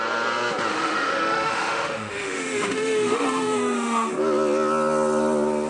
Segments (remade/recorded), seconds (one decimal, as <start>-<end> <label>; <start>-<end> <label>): 0.0-0.7 recorded; 0.7-4.1 remade; 4.1-5.7 recorded